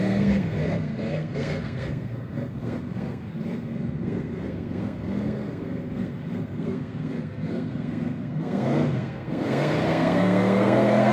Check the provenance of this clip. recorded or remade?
remade